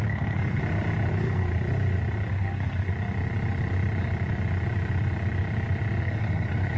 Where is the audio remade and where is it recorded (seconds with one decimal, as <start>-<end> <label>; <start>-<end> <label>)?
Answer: 0.0-0.6 remade; 0.6-1.1 recorded; 1.1-1.5 remade; 1.5-2.3 recorded; 2.3-2.9 remade; 2.9-6.0 recorded; 6.0-6.8 remade

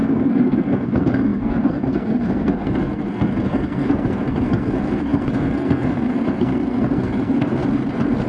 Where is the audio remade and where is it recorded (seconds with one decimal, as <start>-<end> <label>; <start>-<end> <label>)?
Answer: 0.0-7.6 remade; 7.6-8.3 recorded

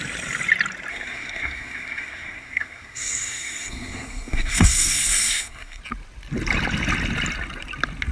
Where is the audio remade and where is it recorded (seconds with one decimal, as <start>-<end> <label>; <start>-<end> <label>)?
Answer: 0.0-0.9 recorded; 0.9-5.8 remade; 5.8-8.1 recorded

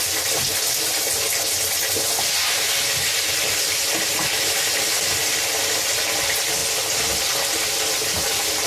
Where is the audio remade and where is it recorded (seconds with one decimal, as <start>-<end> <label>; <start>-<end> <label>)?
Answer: 0.0-8.7 recorded